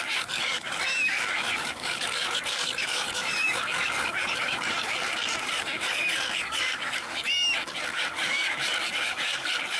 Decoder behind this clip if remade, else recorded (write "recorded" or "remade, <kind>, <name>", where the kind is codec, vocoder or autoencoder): remade, codec, DAC